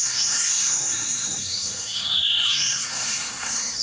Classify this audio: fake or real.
fake